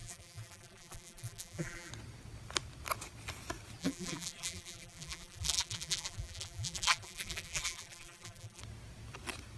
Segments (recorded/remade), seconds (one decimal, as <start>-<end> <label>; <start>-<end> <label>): 0.0-1.9 remade; 1.9-3.8 recorded; 3.8-8.6 remade; 8.6-9.6 recorded